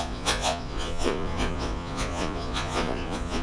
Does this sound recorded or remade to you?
remade